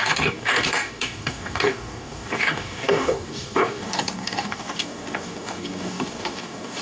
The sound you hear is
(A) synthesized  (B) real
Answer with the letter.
A